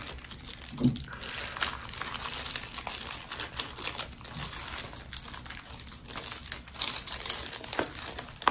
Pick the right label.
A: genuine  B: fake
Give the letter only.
A